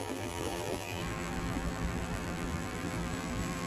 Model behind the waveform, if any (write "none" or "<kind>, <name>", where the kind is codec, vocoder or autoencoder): vocoder, BigVGAN v2